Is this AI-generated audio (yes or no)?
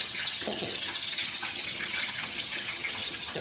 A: yes